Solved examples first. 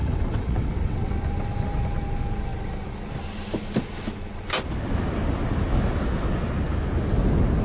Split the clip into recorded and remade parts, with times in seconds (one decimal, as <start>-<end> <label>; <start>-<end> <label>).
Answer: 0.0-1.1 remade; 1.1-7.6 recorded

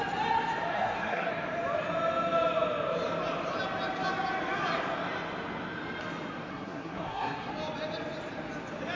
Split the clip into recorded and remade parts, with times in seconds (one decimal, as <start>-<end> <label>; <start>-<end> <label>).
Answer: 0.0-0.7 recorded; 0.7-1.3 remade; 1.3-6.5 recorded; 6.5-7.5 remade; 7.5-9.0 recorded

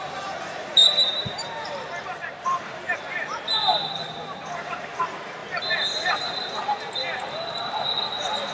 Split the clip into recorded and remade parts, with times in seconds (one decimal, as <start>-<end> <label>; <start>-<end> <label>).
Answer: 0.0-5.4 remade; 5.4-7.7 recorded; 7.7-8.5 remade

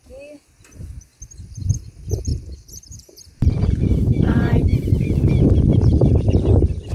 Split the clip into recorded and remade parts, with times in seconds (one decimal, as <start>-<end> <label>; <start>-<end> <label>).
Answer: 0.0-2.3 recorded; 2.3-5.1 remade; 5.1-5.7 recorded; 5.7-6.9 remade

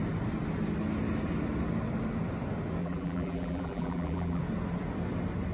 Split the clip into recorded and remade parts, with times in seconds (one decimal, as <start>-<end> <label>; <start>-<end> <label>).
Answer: 0.0-2.8 recorded; 2.8-4.4 remade; 4.4-5.5 recorded

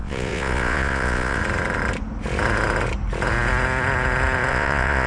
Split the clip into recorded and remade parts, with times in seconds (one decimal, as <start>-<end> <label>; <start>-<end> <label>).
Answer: 0.0-1.4 remade; 1.4-4.5 recorded; 4.5-5.1 remade

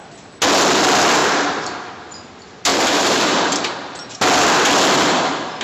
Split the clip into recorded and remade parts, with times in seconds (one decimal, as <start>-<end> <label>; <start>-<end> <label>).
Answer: 0.0-1.2 recorded; 1.2-1.9 remade; 1.9-2.7 recorded; 2.7-4.1 remade; 4.1-5.6 recorded